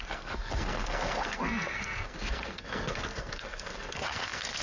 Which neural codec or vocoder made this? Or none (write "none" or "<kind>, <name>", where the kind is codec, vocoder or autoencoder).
codec, SNAC